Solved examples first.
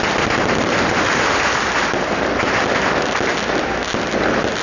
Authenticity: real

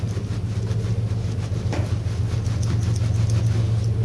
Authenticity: real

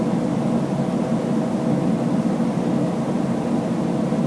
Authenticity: real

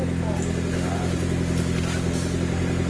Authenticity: real